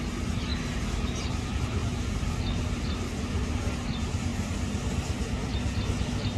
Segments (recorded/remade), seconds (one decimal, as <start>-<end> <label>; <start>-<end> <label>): 0.0-6.4 recorded